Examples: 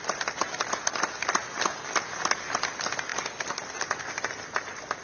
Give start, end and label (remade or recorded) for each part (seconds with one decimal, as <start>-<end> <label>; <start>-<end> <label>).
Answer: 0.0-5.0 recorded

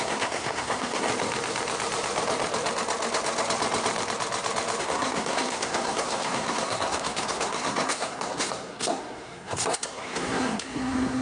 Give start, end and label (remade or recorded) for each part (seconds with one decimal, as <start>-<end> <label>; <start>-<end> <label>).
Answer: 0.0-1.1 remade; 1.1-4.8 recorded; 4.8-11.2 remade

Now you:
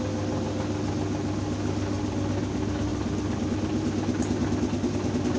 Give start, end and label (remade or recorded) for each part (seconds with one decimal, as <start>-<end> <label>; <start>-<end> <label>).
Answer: 0.0-5.4 recorded